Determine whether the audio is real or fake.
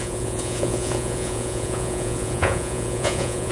fake